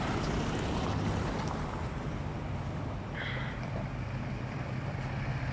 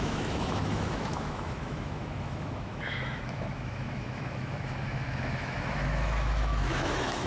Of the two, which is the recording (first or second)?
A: first